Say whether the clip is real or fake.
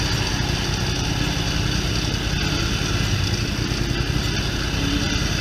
real